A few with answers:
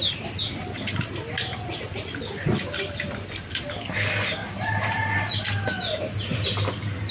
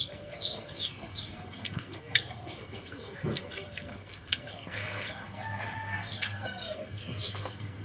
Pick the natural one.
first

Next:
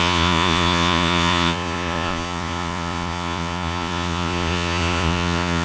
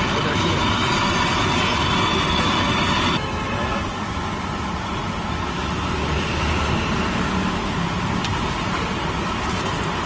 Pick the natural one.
second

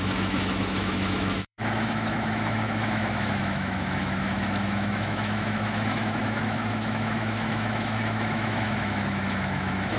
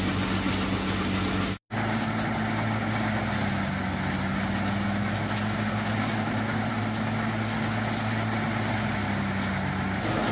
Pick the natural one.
second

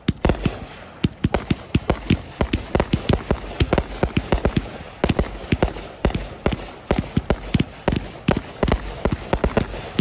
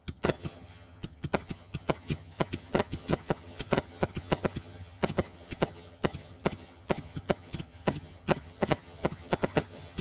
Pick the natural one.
first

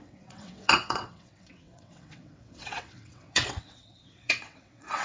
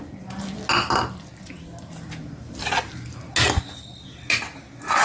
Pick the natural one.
second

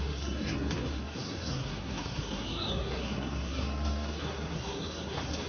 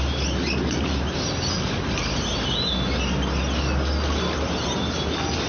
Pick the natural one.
second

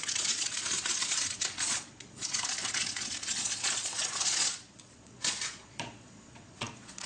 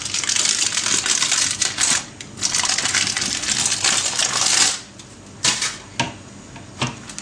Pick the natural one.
second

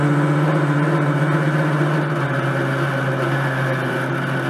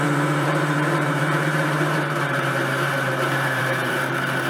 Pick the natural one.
first